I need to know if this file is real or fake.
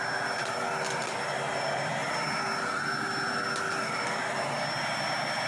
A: real